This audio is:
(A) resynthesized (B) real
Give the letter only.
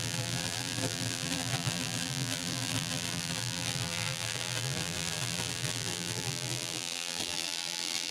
A